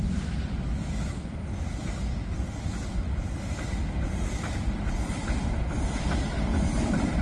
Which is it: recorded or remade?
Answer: remade